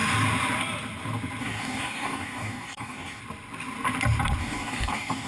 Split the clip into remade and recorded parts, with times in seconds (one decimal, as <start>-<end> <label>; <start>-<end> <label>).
0.0-1.4 recorded; 1.4-3.2 remade; 3.2-4.4 recorded; 4.4-5.3 remade